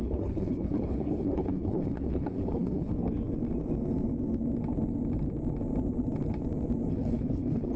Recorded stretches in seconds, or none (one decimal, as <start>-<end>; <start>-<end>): 2.9-6.9